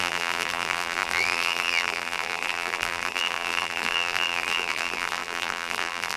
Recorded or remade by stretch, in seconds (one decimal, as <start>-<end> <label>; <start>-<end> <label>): 0.0-6.2 remade